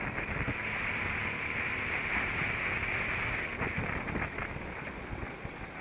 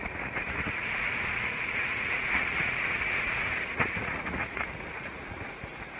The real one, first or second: first